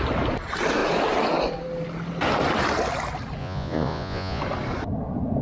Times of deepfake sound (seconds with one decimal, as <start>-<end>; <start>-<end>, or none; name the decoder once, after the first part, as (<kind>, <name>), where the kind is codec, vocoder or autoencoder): 3.4-4.4 (vocoder, Vocos)